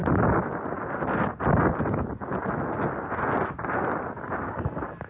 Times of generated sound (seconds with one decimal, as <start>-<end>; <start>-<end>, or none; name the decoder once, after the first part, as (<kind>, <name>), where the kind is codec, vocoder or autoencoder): none